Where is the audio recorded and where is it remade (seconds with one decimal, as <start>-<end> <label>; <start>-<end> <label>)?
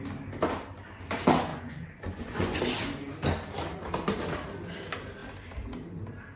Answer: 0.0-1.5 recorded; 1.5-2.6 remade; 2.6-6.4 recorded